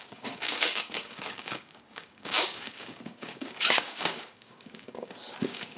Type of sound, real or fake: fake